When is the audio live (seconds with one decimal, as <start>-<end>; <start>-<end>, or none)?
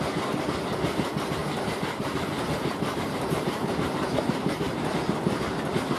0.0-1.4; 5.0-6.0